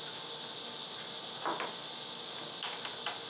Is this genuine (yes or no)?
yes